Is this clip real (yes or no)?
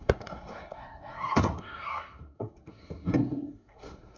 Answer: no